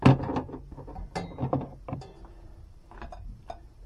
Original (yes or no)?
yes